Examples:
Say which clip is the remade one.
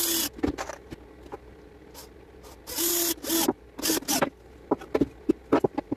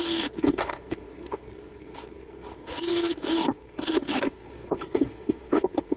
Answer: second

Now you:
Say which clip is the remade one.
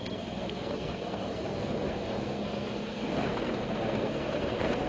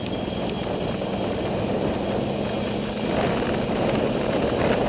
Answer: first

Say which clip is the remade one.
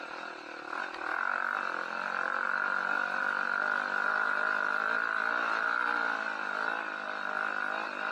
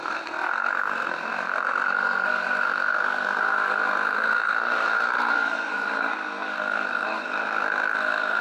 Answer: second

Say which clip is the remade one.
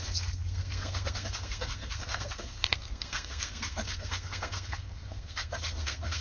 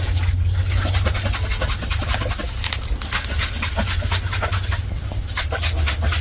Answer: first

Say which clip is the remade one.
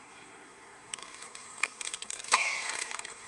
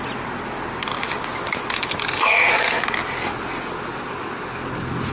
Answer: first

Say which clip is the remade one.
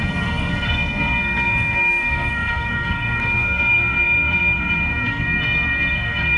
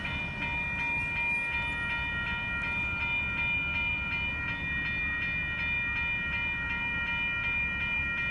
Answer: first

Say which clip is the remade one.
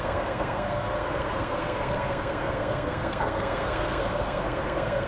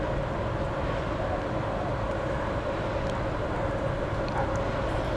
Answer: first